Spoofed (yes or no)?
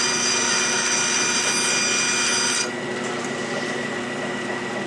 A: no